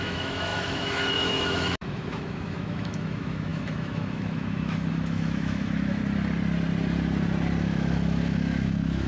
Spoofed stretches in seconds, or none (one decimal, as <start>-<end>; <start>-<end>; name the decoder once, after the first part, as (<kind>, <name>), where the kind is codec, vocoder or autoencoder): 0.0-6.0 (autoencoder, DAC-VAE); 7.6-9.1